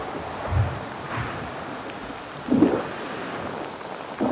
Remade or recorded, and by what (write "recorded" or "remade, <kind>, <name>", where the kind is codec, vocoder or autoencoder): recorded